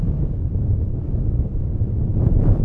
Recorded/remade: recorded